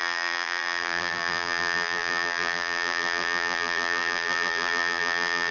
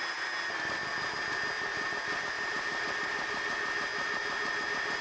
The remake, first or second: first